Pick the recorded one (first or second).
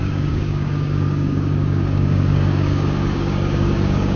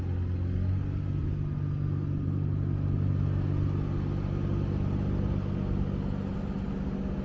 second